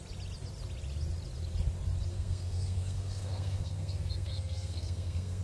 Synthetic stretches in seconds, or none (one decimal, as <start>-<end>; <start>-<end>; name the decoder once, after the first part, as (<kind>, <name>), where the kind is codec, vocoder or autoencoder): 2.1-5.4 (codec, SNAC)